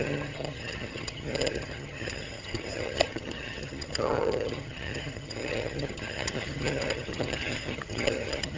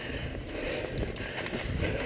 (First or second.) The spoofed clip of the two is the first